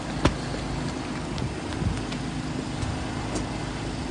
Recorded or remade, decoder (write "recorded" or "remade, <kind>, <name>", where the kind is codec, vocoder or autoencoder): recorded